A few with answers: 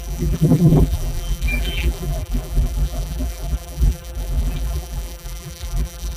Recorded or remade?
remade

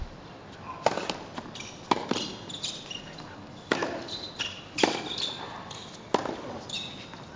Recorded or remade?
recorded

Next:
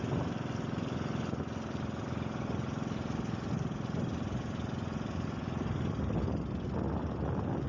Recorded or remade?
recorded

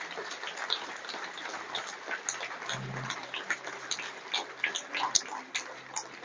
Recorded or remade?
recorded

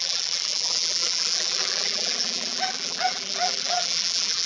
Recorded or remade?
remade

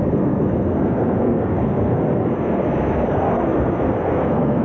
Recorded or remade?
remade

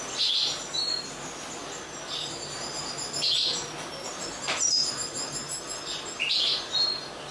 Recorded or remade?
recorded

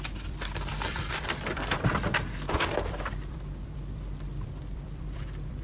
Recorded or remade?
remade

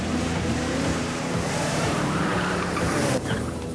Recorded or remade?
remade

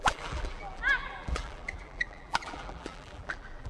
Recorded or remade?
remade